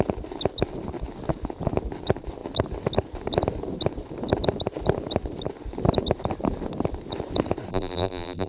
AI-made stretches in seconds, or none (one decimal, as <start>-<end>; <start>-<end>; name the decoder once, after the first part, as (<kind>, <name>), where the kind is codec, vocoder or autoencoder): 7.7-8.5 (vocoder, BigVGAN v2)